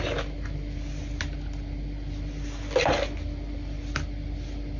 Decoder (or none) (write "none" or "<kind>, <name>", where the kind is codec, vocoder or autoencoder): none